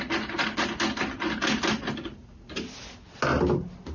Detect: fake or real real